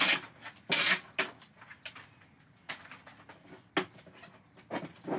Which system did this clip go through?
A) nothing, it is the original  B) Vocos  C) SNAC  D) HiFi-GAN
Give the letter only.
A